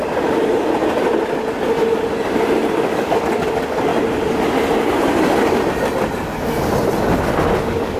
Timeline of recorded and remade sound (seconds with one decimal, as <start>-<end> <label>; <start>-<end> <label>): 0.0-2.8 recorded; 2.8-3.9 remade; 3.9-7.6 recorded; 7.6-8.0 remade

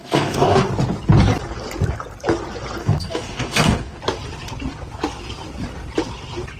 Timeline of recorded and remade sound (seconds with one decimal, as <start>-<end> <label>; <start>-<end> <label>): 0.0-0.7 remade; 0.7-2.8 recorded; 2.8-4.0 remade; 4.0-6.6 recorded

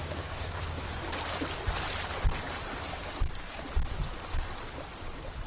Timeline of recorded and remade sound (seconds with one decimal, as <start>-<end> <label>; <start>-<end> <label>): 0.0-0.8 remade; 0.8-5.5 recorded

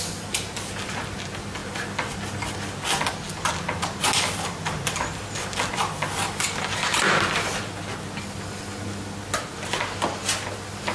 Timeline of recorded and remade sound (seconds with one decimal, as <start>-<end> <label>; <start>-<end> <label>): 0.0-10.9 recorded